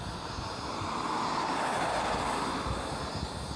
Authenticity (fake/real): real